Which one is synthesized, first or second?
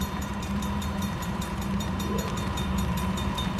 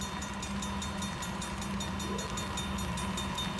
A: first